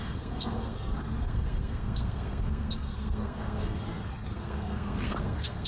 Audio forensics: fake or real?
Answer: fake